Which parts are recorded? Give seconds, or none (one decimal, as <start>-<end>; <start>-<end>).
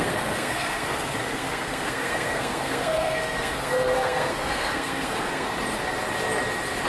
5.5-6.9